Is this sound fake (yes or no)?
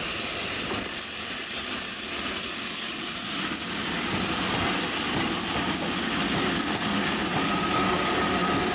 no